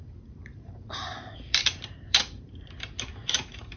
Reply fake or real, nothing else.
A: fake